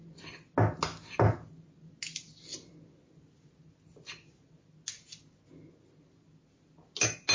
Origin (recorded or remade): recorded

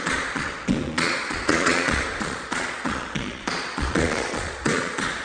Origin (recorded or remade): remade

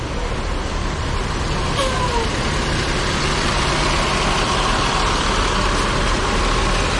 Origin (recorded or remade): recorded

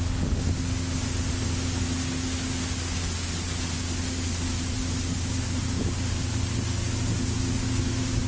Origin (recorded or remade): recorded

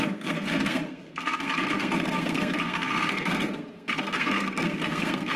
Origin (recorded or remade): remade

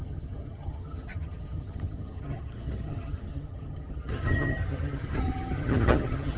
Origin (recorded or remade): remade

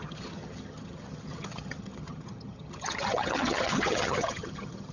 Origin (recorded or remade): remade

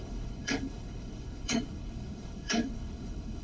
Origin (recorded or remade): remade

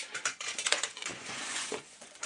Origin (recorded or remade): remade